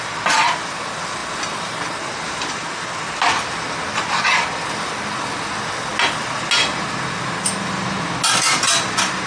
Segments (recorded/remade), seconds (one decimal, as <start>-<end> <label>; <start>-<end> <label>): 0.0-9.3 recorded